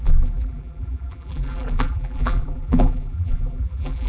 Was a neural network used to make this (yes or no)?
yes